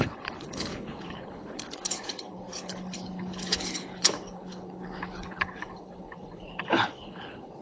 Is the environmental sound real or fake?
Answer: fake